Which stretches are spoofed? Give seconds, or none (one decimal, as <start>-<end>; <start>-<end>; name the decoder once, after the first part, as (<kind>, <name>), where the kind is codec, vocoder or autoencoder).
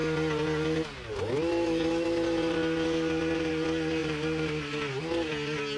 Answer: none